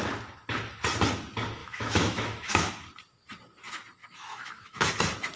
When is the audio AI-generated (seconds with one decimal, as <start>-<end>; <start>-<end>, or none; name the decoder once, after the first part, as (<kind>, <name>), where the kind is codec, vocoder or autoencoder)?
1.6-2.7 (autoencoder, DAC-VAE); 4.0-4.9